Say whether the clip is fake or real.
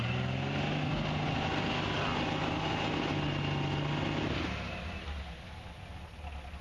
real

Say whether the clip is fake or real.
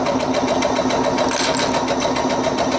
real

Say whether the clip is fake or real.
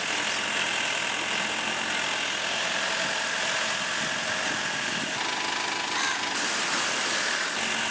real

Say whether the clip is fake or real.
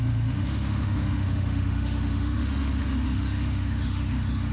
fake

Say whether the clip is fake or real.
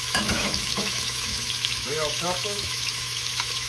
fake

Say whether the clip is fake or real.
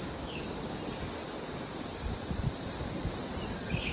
real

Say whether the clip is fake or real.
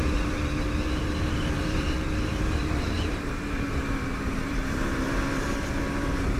fake